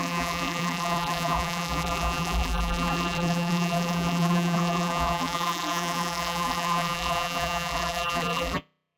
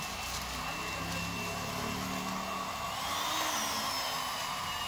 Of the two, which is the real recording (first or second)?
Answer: second